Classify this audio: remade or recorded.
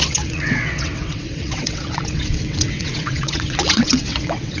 remade